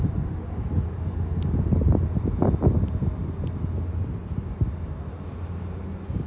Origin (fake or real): real